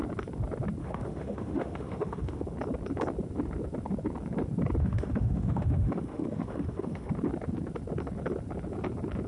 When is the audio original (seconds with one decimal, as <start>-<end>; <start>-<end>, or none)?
0.0-0.8; 2.4-4.8; 7.1-9.3